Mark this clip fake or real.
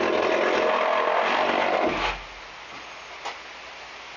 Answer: real